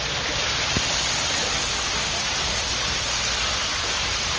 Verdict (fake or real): real